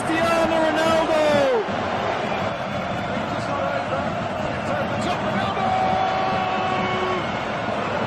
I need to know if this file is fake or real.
real